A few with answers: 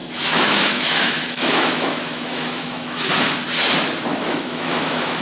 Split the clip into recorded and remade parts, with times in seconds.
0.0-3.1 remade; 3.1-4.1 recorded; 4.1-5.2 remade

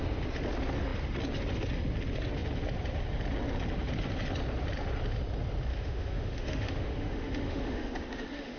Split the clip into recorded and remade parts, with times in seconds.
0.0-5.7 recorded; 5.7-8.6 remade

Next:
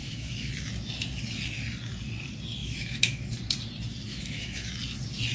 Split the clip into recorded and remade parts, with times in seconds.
0.0-0.5 remade; 0.5-2.6 recorded; 2.6-3.3 remade; 3.3-4.1 recorded; 4.1-4.7 remade; 4.7-5.3 recorded

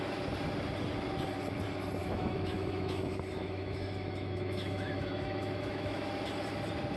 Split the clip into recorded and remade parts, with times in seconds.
0.0-2.0 recorded; 2.0-6.2 remade; 6.2-7.0 recorded